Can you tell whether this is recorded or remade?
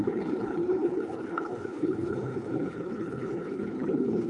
remade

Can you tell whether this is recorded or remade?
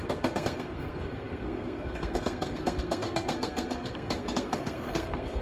remade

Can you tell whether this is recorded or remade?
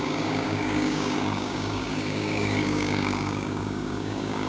remade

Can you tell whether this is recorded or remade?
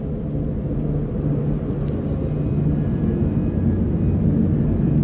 recorded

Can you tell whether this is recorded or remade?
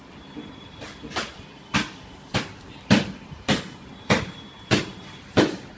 remade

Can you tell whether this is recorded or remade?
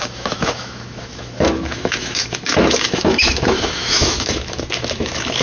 remade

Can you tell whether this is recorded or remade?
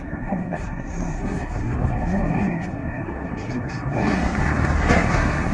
remade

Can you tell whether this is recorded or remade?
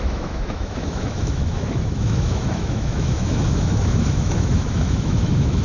remade